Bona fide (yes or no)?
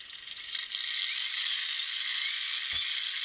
yes